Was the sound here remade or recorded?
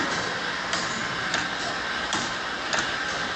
recorded